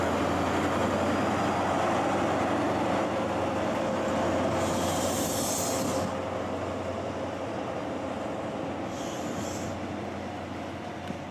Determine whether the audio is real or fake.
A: real